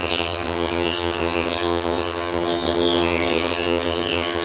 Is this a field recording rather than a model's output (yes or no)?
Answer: no